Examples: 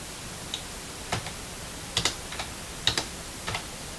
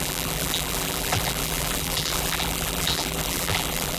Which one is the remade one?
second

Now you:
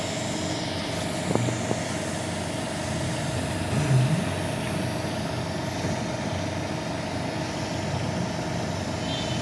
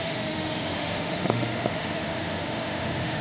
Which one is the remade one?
second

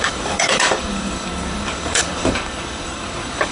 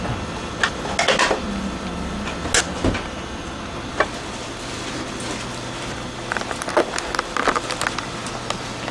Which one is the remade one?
first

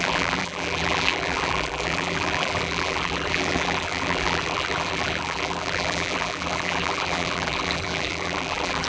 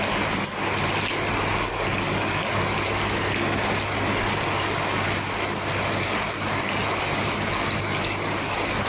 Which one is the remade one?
first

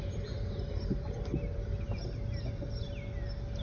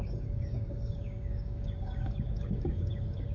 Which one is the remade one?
second